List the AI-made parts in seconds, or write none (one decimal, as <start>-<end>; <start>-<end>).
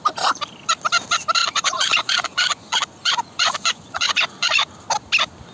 1.4-4.7